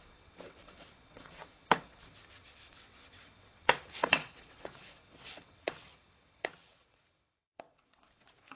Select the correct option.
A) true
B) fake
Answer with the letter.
B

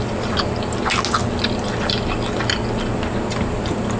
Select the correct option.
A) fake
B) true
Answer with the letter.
B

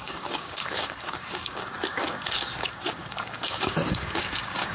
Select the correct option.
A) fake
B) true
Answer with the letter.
A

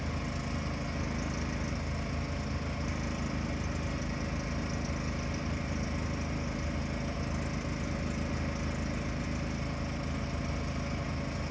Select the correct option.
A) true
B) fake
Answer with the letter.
A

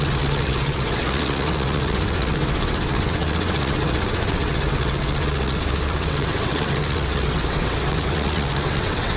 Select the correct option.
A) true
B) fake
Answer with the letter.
B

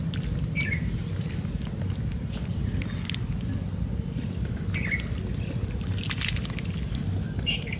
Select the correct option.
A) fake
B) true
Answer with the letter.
B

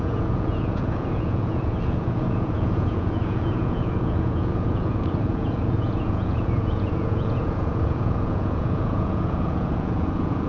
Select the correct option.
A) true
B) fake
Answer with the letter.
B